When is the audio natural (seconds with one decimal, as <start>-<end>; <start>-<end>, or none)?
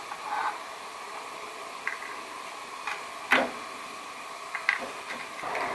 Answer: 0.0-5.7